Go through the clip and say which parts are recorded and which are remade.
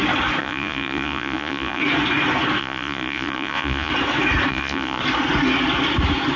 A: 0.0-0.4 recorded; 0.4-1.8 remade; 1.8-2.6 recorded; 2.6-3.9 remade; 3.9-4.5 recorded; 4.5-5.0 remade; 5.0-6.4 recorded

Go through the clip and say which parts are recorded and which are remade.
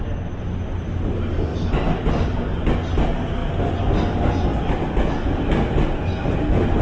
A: 0.0-6.8 recorded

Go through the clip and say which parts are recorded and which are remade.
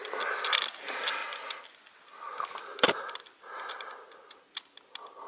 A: 0.0-5.3 recorded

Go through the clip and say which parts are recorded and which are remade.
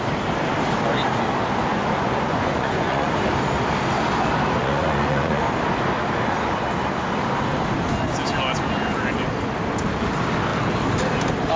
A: 0.0-1.7 recorded; 1.7-3.1 remade; 3.1-4.6 recorded; 4.6-5.4 remade; 5.4-11.6 recorded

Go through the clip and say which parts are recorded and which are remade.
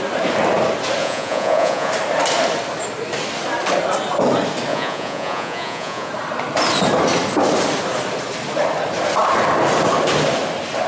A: 0.0-1.0 recorded; 1.0-1.9 remade; 1.9-4.7 recorded; 4.7-6.1 remade; 6.1-10.9 recorded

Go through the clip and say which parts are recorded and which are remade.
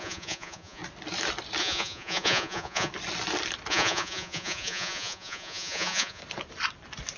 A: 0.0-0.8 remade; 0.8-1.6 recorded; 1.6-2.9 remade; 2.9-3.7 recorded; 3.7-6.2 remade; 6.2-7.2 recorded